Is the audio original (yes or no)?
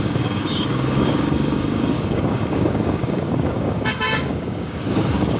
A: no